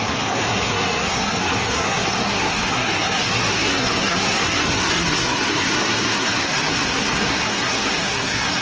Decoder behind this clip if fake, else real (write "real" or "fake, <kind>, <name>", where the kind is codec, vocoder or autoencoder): fake, codec, SNAC